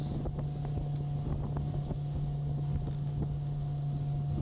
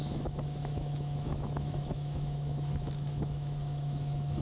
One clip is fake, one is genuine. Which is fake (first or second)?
second